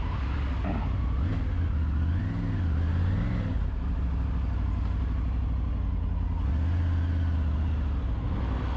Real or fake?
real